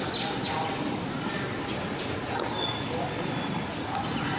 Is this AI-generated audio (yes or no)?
no